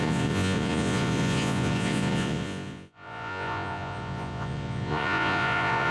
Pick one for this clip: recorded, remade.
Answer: remade